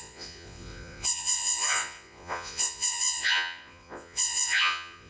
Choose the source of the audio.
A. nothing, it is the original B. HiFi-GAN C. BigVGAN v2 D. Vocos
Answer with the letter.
D